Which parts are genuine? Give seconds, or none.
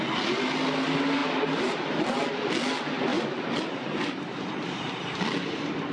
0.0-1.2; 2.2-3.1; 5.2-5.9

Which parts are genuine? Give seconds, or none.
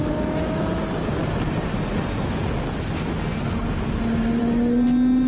0.0-5.3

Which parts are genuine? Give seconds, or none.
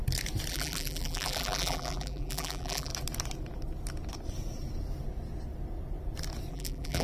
0.0-0.5; 2.9-6.5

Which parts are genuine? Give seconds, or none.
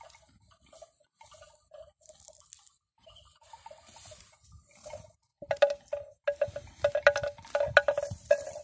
0.0-8.6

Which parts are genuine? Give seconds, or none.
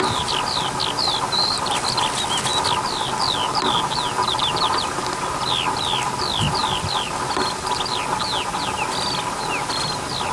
0.0-10.3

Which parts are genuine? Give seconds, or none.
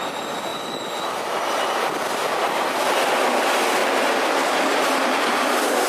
0.0-5.9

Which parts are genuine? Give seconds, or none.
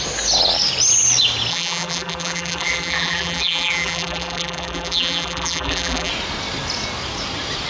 0.0-1.5; 6.1-7.7